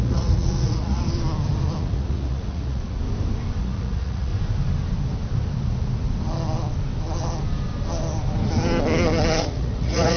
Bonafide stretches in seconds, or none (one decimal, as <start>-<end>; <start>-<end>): 1.0-1.8; 3.0-3.6; 4.3-9.4